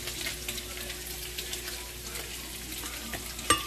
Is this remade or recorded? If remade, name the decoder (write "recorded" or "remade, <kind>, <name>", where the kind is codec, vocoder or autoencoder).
recorded